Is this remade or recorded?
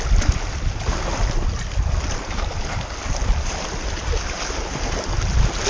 recorded